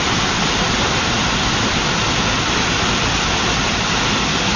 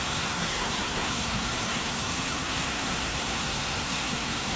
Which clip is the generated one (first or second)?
second